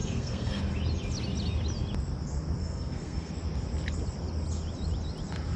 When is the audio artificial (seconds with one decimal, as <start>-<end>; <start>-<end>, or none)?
0.0-0.6; 2.6-3.3